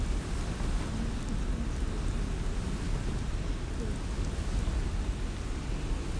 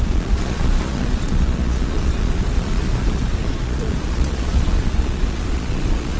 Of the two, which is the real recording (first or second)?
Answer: first